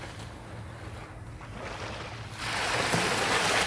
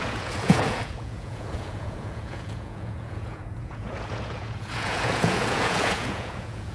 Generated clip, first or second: second